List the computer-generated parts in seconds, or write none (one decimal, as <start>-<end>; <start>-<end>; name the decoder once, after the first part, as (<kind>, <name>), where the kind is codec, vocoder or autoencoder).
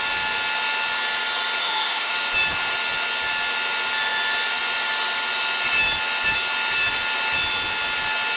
1.6-2.1 (autoencoder, DAC-VAE)